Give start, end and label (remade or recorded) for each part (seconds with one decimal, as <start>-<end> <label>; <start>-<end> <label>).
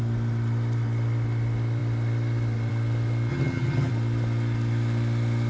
0.0-3.3 recorded; 3.3-3.9 remade; 3.9-5.5 recorded